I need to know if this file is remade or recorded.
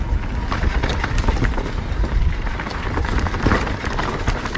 recorded